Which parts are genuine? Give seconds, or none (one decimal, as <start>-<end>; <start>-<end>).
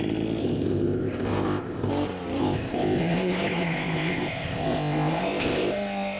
0.0-0.4; 1.9-2.4